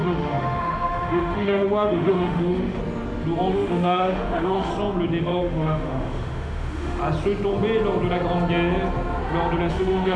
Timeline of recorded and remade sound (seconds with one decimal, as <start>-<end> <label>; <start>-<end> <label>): 0.0-2.8 remade; 2.8-3.5 recorded; 3.5-4.7 remade; 4.7-5.2 recorded; 5.2-7.0 remade; 7.0-9.7 recorded; 9.7-10.2 remade